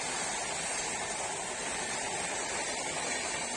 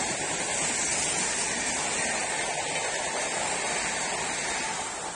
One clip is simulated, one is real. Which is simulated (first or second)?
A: first